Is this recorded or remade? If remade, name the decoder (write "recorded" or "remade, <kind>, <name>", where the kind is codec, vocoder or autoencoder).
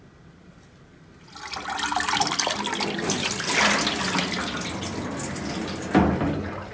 recorded